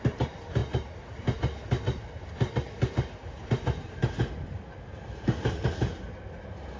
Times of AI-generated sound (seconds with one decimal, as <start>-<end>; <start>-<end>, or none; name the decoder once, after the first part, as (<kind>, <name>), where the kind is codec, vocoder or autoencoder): none

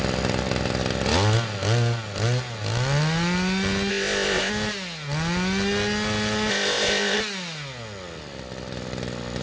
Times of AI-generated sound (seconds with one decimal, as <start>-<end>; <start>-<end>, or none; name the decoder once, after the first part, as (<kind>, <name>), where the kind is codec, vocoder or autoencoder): 3.9-4.5 (codec, ZipCodec); 6.5-7.2

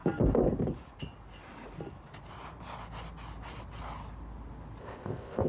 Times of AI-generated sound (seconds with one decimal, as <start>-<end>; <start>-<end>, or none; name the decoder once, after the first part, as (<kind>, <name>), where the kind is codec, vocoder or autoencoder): 4.8-5.5 (codec, ZipCodec)

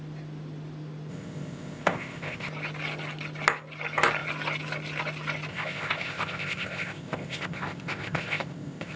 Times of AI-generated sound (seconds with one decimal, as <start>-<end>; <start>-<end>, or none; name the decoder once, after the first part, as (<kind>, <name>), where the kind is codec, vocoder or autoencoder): 1.1-2.5 (codec, ZipCodec); 5.5-9.0